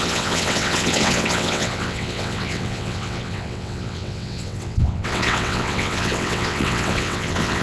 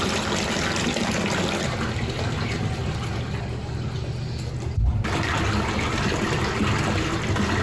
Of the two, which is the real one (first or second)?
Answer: second